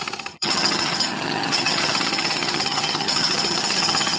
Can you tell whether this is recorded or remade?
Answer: remade